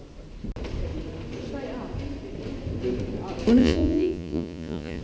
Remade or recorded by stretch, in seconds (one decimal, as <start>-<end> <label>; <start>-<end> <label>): 0.0-3.6 recorded; 3.6-5.0 remade